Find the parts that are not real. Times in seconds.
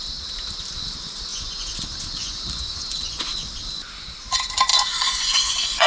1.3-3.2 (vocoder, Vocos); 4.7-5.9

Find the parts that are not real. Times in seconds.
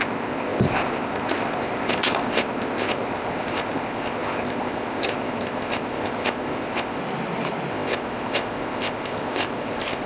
0.0-7.0 (codec, ZipCodec); 7.7-10.1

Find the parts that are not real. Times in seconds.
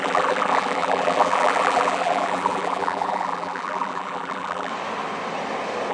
0.0-4.7 (vocoder, BigVGAN v2)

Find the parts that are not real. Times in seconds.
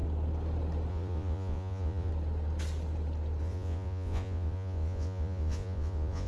0.9-2.1 (vocoder, Vocos); 3.4-6.3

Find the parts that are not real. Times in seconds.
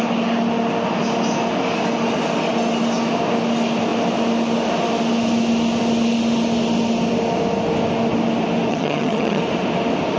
8.7-9.4 (vocoder, HiFi-GAN)